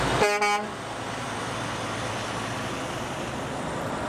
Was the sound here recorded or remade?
recorded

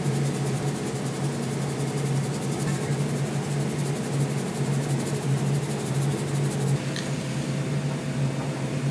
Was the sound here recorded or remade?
recorded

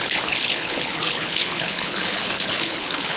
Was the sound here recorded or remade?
remade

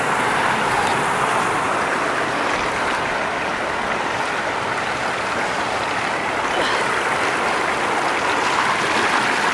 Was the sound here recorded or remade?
recorded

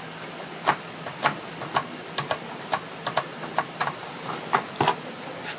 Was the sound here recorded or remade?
recorded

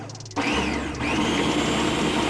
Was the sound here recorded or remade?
recorded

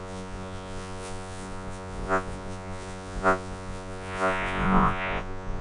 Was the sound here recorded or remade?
remade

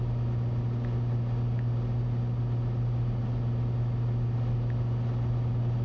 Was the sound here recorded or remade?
recorded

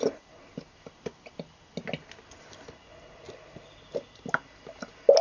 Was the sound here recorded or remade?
recorded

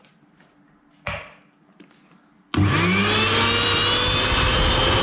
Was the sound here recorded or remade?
recorded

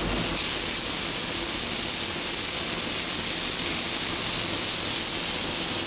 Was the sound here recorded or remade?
recorded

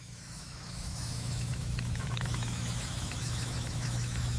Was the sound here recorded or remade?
remade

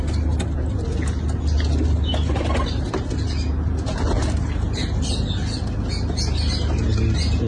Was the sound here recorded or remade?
recorded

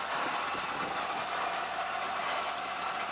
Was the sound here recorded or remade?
recorded